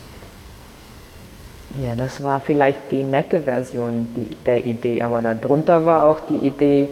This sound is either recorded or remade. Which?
remade